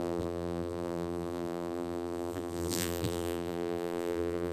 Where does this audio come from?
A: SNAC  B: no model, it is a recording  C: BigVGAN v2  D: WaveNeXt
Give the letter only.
C